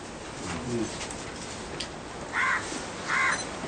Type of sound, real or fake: real